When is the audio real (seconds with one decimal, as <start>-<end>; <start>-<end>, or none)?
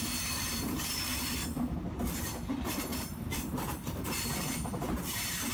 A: 1.4-2.2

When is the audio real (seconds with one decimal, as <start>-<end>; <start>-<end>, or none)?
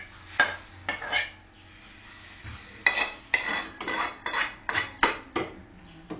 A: 0.0-6.2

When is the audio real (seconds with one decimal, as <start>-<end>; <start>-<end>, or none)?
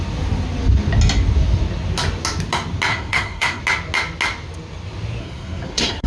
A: 0.0-2.9; 3.6-5.2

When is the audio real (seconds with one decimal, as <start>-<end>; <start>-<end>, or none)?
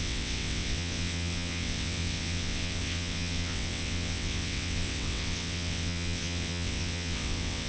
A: none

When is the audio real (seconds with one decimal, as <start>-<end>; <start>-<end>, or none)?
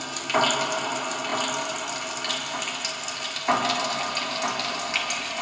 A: 0.0-5.4